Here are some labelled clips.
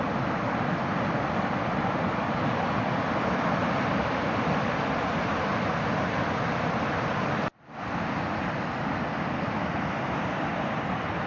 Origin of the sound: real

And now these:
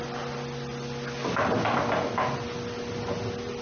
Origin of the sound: real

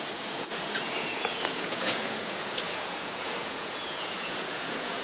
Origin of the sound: fake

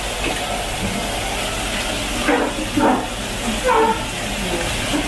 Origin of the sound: real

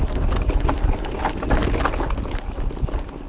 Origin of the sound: real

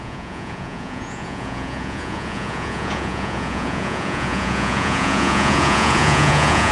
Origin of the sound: fake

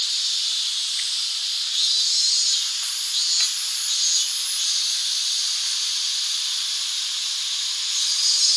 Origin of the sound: real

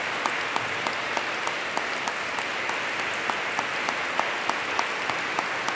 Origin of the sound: real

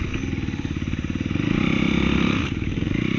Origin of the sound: real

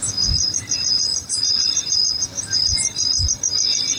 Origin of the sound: real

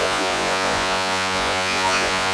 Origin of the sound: fake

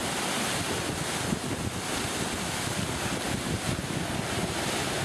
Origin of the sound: real